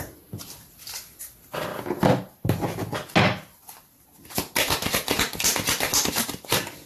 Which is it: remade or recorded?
recorded